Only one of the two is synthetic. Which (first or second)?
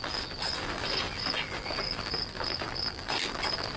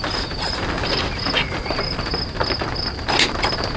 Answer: first